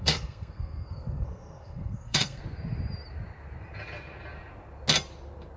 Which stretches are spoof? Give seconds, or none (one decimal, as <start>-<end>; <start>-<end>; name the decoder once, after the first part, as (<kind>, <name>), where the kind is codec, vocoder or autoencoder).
0.0-2.4 (codec, SNAC)